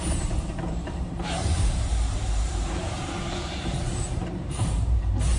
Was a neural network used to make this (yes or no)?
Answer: yes